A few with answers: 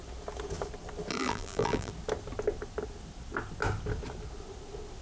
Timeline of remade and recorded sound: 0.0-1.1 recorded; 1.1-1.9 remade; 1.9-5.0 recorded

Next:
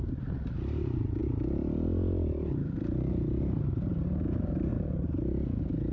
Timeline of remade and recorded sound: 0.0-5.9 recorded

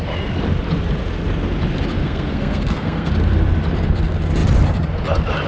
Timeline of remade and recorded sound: 0.0-2.0 recorded; 2.0-3.1 remade; 3.1-5.5 recorded

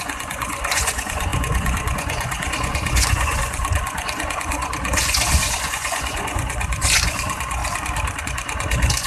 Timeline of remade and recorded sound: 0.0-7.6 remade; 7.6-8.2 recorded; 8.2-9.1 remade